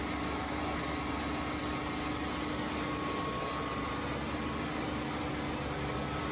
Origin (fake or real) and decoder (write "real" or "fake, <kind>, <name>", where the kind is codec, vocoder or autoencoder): real